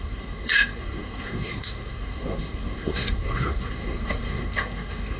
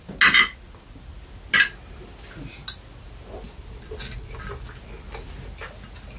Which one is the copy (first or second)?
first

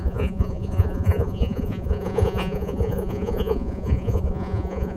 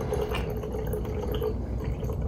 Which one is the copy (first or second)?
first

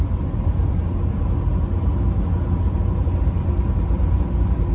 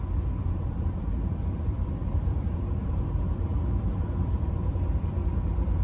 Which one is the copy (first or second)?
second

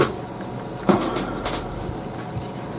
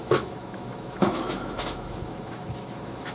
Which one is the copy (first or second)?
second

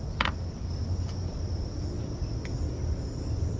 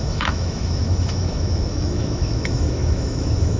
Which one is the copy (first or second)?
second